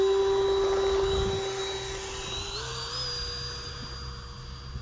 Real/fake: real